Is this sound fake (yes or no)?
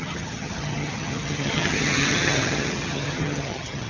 yes